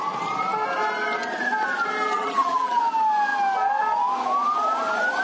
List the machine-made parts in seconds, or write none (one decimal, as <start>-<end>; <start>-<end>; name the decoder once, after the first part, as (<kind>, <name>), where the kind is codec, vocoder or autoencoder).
2.1-2.8 (vocoder, BigVGAN v2)